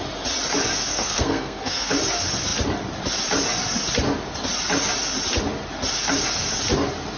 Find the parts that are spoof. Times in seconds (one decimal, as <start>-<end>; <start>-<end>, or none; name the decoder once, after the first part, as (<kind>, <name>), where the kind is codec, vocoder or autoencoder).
0.9-1.9 (codec, SNAC)